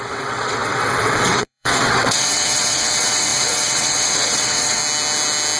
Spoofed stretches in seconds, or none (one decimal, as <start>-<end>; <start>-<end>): 0.0-4.8